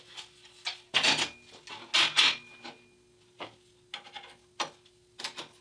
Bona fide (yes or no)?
yes